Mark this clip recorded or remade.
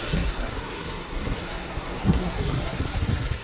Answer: remade